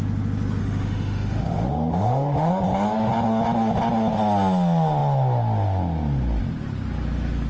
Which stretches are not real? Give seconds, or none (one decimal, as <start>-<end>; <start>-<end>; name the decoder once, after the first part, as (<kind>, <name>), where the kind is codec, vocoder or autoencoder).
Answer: 0.6-2.5 (autoencoder, DAC-VAE)